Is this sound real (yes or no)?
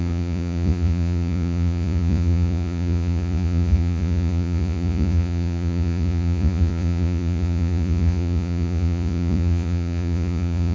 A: no